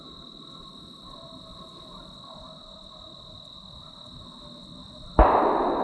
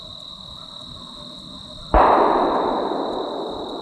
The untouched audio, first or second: first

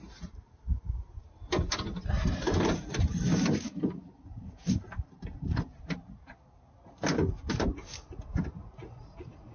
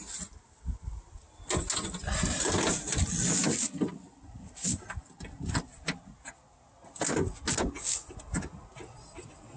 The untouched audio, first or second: second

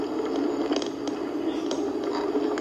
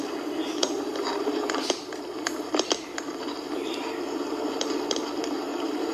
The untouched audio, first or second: first